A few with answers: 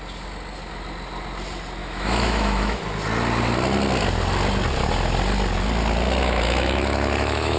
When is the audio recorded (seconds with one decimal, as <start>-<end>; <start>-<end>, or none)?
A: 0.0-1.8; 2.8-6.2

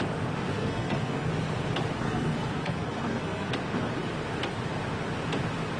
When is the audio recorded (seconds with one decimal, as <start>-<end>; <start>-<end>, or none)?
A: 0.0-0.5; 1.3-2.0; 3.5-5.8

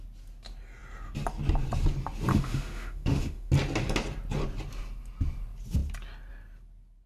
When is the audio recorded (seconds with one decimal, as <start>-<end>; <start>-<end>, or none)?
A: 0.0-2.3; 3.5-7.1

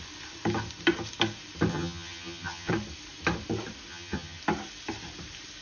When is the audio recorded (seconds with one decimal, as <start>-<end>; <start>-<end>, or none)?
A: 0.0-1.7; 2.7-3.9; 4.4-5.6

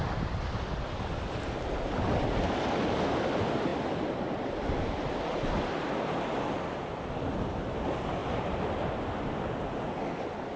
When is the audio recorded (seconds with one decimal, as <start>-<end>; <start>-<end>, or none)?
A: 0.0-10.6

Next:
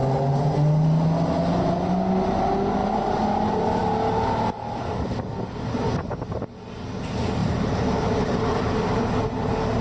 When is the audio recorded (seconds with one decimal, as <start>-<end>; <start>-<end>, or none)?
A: 0.0-2.8; 3.8-7.4; 9.1-9.8

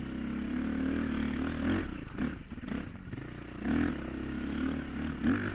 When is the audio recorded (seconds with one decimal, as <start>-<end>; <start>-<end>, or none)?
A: 0.0-5.5